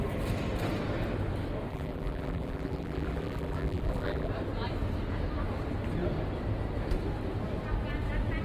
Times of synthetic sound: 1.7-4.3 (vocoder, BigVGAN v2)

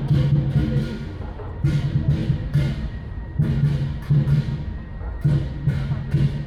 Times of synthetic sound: 0.6-1.3 (vocoder, BigVGAN v2); 2.2-3.4

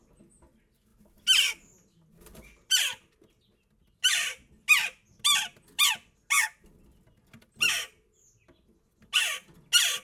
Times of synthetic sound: none

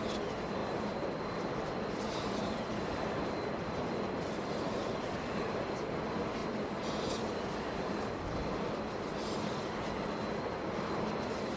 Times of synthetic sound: 0.6-5.4 (vocoder, BigVGAN v2); 6.4-8.8

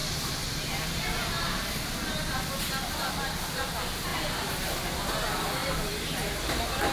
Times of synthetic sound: 0.0-1.0 (vocoder, BigVGAN v2); 5.6-6.9

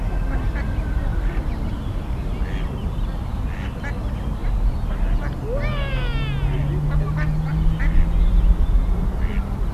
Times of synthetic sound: 1.1-2.2 (vocoder, BigVGAN v2)

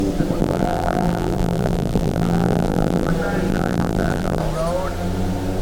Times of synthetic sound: 0.4-3.1 (vocoder, BigVGAN v2); 3.5-4.4